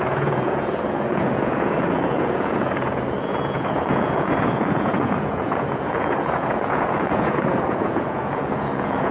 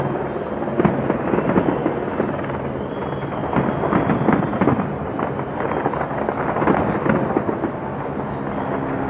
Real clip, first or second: second